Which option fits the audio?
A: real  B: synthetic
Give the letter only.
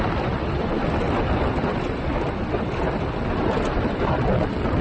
A